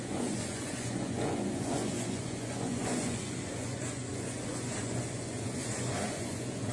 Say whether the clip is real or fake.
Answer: fake